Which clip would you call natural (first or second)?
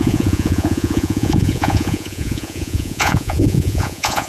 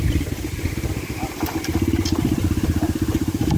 second